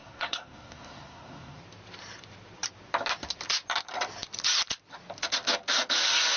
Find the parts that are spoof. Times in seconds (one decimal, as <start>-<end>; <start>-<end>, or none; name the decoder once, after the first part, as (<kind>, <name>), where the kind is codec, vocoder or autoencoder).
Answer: 0.0-1.6 (codec, SNAC)